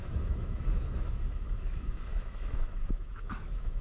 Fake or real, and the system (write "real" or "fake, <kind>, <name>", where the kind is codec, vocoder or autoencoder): fake, autoencoder, DAC-VAE